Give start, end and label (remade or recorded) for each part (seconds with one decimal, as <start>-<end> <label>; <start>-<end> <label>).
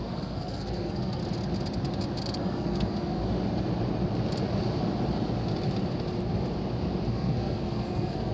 0.0-1.2 remade; 1.2-2.4 recorded; 2.4-3.2 remade; 3.2-7.1 recorded; 7.1-8.3 remade